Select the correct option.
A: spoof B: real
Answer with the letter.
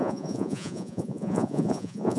A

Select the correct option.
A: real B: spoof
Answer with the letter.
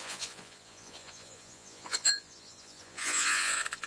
B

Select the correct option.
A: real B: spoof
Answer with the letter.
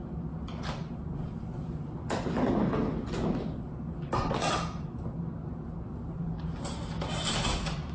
A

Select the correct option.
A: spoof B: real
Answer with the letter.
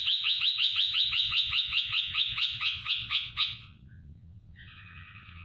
A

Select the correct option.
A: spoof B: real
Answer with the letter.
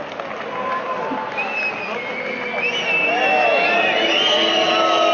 B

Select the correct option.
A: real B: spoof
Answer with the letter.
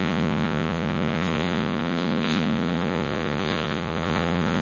B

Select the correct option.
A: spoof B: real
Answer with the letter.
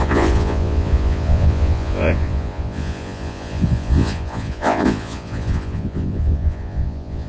A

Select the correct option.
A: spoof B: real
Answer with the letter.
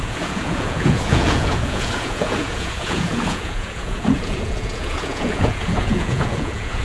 A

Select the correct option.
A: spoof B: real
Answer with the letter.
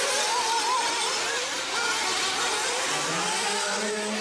B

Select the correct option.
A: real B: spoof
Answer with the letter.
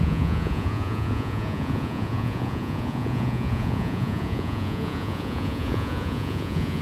B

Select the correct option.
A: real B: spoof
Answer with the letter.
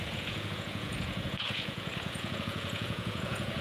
B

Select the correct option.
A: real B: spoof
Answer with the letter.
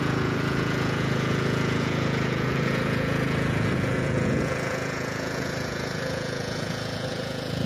B